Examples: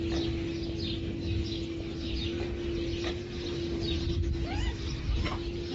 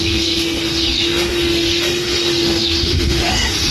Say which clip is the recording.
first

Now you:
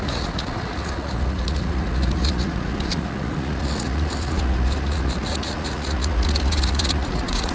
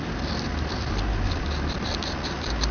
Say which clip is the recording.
second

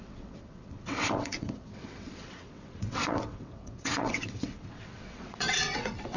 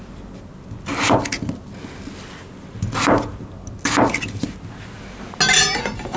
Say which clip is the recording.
second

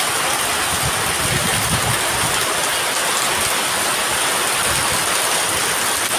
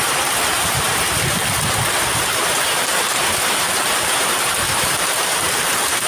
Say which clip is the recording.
first